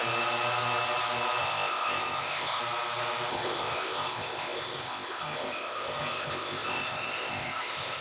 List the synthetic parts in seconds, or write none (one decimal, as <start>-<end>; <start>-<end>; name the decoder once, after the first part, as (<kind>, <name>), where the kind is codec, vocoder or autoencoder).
1.4-2.6 (codec, ZipCodec); 3.3-8.0